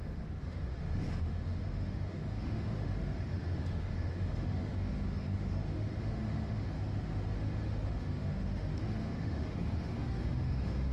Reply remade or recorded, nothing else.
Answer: remade